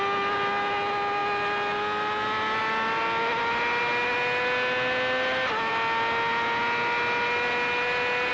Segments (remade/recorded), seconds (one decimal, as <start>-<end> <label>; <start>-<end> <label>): 0.0-8.3 recorded